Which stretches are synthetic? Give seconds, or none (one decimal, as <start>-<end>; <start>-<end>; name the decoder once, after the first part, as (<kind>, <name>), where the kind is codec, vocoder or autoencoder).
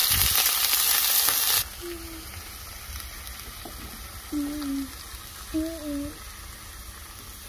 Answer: none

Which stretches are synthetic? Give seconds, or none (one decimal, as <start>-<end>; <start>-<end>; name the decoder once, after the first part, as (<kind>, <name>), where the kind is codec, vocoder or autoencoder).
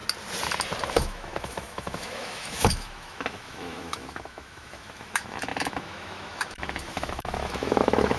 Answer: 0.9-8.2 (autoencoder, DAC-VAE)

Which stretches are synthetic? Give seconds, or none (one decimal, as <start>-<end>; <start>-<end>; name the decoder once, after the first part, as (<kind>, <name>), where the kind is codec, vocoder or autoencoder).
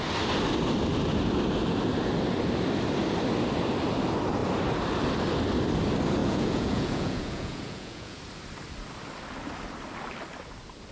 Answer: 6.2-8.2 (vocoder, Vocos)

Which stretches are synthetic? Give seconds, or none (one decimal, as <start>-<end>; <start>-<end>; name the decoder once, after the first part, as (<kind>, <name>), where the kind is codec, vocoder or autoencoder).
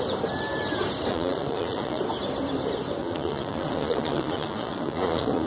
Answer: 1.1-2.0 (vocoder, Vocos); 3.0-5.5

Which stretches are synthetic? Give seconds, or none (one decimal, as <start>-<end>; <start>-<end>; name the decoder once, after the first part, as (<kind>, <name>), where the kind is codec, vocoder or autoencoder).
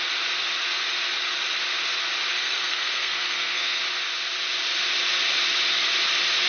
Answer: 2.3-3.8 (codec, SNAC)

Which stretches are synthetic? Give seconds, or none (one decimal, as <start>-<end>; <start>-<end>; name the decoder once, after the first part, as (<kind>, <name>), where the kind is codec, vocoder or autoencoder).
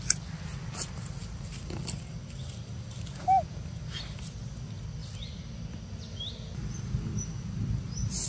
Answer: none